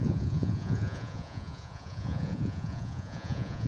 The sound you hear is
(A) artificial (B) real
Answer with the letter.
A